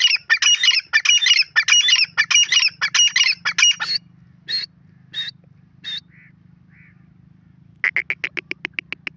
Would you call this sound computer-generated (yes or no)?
no